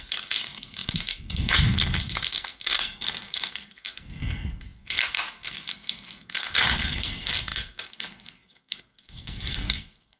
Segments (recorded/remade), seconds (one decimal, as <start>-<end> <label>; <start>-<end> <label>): 0.0-10.2 remade